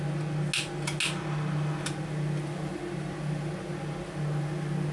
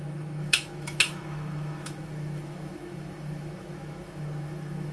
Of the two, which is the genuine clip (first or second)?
first